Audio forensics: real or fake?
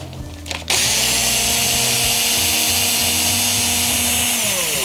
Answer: real